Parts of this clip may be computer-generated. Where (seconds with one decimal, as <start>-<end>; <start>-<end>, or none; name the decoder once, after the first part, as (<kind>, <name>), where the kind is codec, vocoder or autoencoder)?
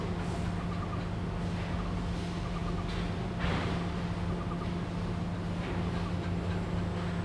none